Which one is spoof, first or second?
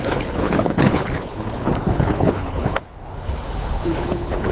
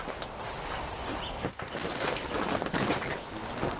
first